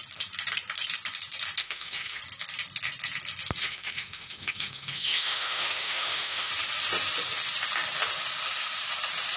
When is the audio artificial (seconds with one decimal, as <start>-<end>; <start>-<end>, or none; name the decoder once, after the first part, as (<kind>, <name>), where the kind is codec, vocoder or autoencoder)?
1.6-2.2 (autoencoder, DAC-VAE); 3.6-6.5